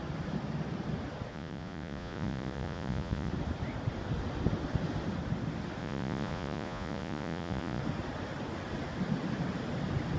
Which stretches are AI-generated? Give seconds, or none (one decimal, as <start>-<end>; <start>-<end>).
1.3-3.3; 5.8-7.8